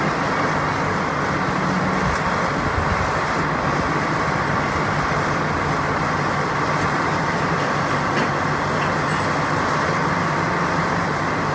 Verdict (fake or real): real